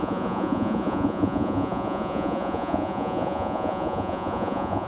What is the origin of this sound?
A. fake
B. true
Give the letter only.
A